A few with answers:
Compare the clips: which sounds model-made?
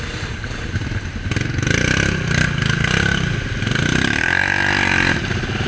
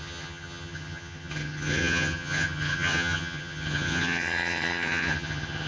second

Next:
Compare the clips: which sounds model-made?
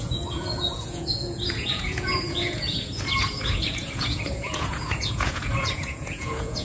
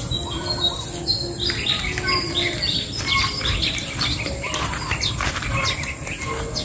first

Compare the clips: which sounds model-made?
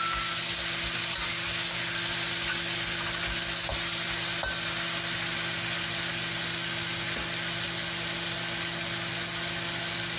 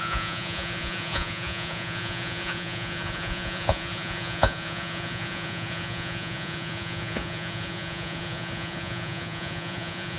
second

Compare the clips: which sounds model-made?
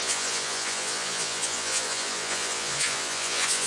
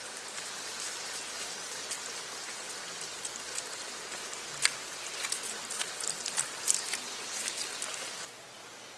first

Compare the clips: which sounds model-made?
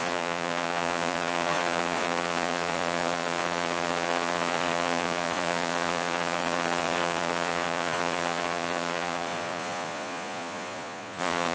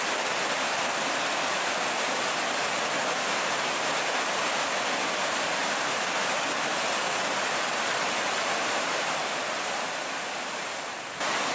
first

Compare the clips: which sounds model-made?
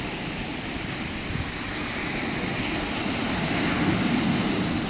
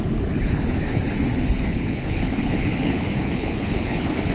second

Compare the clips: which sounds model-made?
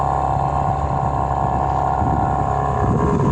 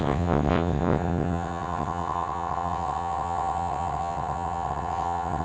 second